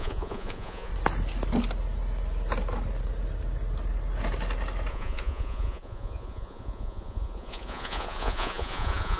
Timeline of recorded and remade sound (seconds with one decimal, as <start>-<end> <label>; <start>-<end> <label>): 0.0-0.9 remade; 0.9-4.9 recorded; 4.9-9.2 remade